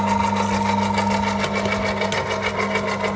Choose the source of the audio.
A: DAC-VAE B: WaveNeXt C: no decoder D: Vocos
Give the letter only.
C